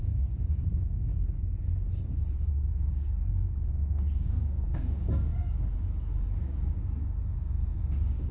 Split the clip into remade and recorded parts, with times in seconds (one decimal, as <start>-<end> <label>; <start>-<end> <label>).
0.0-1.1 remade; 1.1-2.7 recorded; 2.7-8.3 remade